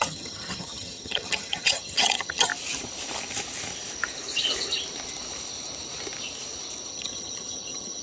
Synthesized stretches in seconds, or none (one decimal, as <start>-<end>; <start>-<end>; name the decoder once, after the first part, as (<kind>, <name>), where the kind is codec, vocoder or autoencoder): 0.0-2.5 (vocoder, HiFi-GAN); 6.9-8.0